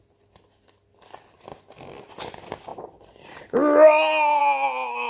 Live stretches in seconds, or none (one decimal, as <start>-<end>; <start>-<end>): 0.0-5.1